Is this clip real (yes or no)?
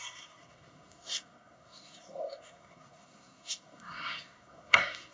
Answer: no